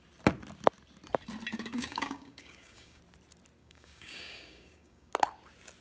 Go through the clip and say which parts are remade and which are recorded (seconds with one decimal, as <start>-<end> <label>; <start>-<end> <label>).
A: 0.0-1.5 recorded; 1.5-3.0 remade; 3.0-3.6 recorded; 3.6-5.1 remade; 5.1-5.8 recorded